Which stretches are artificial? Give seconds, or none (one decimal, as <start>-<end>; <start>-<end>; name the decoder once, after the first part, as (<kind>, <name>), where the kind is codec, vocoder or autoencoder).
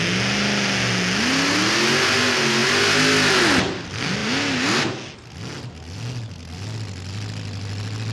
none